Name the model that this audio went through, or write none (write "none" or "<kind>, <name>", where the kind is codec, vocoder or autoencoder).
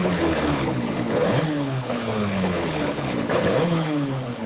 codec, HILCodec